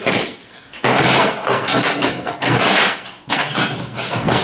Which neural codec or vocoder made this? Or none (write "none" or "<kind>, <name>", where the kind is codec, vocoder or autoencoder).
codec, SNAC